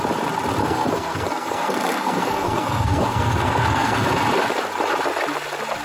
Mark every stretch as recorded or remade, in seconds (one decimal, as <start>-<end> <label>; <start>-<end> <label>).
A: 0.0-0.6 recorded; 0.6-4.1 remade; 4.1-5.8 recorded